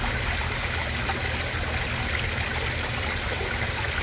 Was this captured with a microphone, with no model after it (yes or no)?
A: yes